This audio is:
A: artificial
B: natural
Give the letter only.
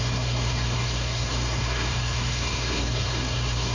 A